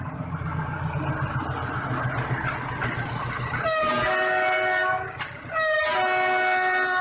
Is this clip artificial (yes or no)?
no